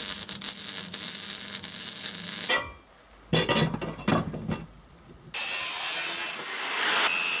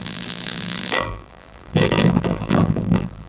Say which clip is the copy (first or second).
second